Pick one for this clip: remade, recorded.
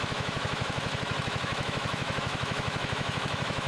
remade